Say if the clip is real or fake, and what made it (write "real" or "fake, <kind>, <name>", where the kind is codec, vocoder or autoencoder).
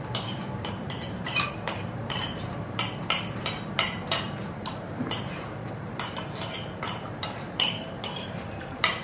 fake, vocoder, BigVGAN v2